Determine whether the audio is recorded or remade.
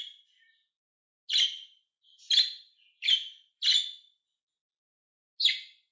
recorded